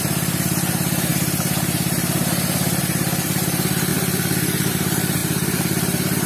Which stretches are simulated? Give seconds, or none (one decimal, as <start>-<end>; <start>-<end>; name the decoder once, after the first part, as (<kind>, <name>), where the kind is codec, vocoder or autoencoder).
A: 0.0-3.9 (vocoder, BigVGAN v2); 4.7-6.3